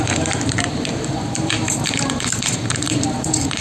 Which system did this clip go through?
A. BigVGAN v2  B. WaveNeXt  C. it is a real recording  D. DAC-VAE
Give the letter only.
A